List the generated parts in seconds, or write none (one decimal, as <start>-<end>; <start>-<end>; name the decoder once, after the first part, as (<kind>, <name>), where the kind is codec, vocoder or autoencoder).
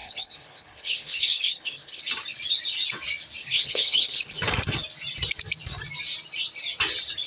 0.0-2.0 (codec, HILCodec); 3.4-4.4